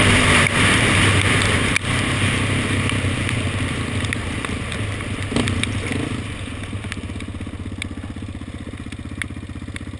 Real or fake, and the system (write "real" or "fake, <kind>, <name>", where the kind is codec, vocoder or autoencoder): real